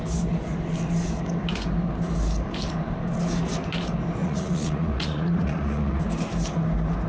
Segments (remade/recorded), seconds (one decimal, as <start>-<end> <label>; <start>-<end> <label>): 0.0-4.2 recorded; 4.2-6.0 remade; 6.0-7.1 recorded